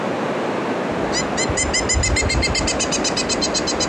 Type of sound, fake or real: real